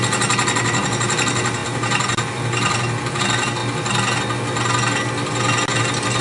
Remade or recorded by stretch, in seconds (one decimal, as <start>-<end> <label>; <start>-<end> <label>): 0.0-6.2 recorded